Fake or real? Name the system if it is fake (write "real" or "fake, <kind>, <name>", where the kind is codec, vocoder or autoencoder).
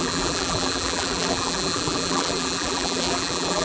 fake, vocoder, BigVGAN v2